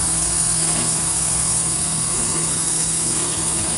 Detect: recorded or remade remade